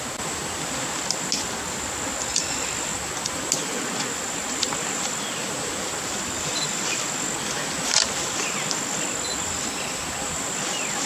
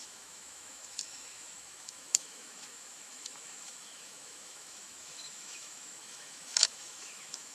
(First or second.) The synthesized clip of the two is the second